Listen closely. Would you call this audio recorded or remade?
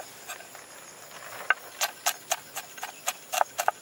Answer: recorded